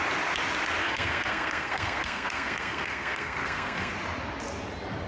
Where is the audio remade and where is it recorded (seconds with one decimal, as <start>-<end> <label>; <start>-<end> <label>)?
0.0-0.8 recorded; 0.8-3.9 remade; 3.9-5.1 recorded